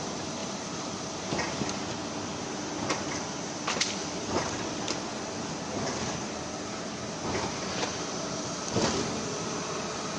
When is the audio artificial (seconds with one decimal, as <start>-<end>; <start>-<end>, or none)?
none